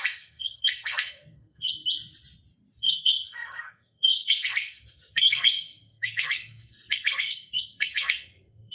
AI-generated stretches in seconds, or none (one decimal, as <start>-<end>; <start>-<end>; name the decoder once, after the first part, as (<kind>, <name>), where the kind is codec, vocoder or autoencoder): 0.0-1.7 (codec, SNAC); 2.8-8.7